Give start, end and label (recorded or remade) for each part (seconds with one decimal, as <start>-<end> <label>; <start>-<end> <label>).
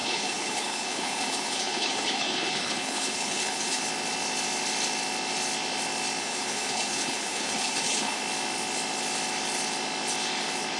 0.0-3.8 remade; 3.8-6.2 recorded; 6.2-8.2 remade; 8.2-10.8 recorded